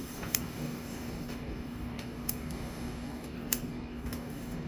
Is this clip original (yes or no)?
no